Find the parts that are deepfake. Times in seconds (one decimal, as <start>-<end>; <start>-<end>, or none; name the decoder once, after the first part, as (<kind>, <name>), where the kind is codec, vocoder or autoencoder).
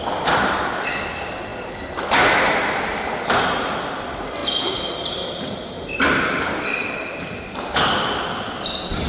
0.0-9.1 (vocoder, BigVGAN v2)